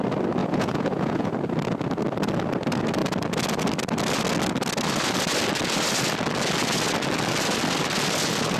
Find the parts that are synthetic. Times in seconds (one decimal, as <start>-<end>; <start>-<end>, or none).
0.4-1.3